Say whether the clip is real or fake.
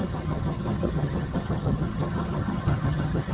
fake